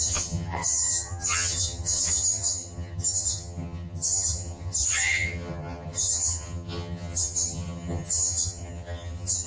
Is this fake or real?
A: fake